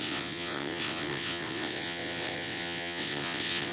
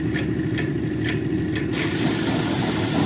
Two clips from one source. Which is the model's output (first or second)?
first